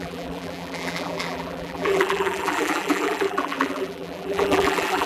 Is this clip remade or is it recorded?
remade